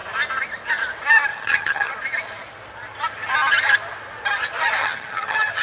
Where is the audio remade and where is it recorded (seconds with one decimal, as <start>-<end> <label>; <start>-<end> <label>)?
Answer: 0.0-1.3 recorded; 1.3-1.9 remade; 1.9-4.8 recorded; 4.8-5.6 remade